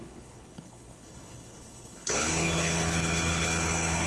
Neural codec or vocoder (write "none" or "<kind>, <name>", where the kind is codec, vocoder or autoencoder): codec, HILCodec